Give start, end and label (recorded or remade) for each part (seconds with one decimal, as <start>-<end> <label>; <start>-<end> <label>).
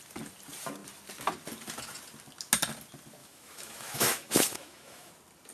0.0-3.2 recorded; 3.2-5.1 remade; 5.1-5.5 recorded